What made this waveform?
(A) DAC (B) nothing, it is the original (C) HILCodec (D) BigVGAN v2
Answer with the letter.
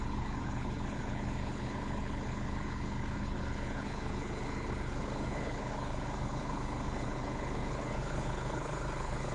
C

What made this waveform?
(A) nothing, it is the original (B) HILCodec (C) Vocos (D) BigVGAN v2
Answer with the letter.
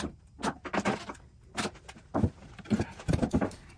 A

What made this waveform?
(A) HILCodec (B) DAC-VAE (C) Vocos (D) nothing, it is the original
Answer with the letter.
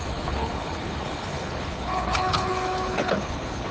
A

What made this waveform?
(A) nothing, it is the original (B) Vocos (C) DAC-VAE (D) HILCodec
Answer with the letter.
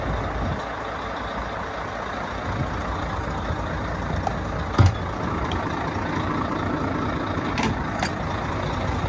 A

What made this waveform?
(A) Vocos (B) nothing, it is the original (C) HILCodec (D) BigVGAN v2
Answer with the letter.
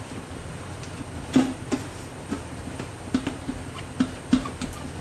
B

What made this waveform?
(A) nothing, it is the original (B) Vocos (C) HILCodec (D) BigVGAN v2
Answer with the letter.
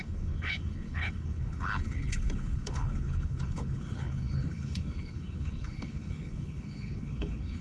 C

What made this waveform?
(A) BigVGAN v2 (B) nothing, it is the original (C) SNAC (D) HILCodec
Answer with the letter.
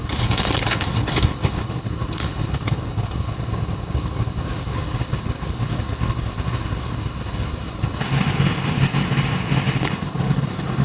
D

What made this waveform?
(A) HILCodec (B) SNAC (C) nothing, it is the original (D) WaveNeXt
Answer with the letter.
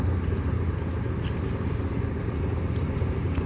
C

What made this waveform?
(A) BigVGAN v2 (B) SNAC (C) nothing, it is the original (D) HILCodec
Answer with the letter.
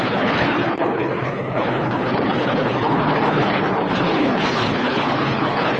D